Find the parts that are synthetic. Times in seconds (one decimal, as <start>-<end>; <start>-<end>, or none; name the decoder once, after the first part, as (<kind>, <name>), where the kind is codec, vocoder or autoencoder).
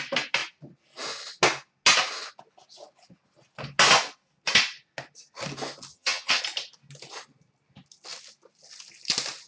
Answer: 5.9-6.4 (vocoder, HiFi-GAN)